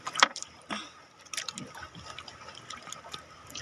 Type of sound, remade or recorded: recorded